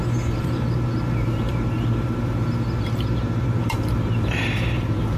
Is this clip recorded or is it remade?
remade